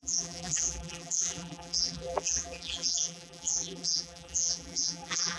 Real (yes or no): no